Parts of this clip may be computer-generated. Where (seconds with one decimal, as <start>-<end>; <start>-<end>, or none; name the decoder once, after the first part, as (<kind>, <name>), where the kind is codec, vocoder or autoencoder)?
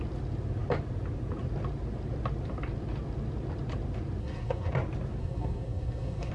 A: 4.2-4.7 (codec, SNAC); 5.2-6.3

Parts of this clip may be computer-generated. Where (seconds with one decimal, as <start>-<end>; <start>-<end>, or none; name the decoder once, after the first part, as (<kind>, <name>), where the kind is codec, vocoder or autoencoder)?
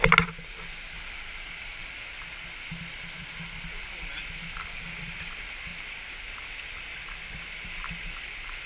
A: 5.7-8.2 (vocoder, BigVGAN v2)